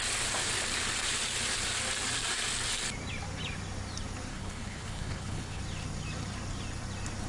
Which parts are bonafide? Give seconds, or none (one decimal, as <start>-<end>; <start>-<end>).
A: 0.0-4.3; 5.6-7.3